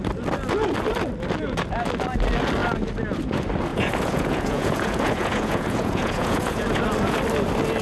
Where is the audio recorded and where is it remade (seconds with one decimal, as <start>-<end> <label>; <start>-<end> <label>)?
0.0-3.7 recorded; 3.7-6.8 remade; 6.8-7.8 recorded